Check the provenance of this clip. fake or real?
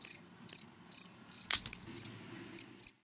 real